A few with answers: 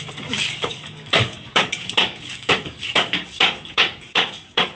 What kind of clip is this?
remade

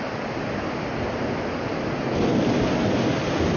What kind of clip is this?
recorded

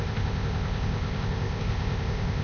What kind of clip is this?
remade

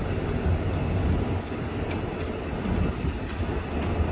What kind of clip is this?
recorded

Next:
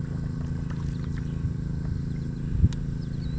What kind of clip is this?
recorded